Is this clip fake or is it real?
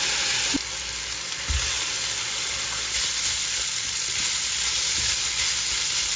real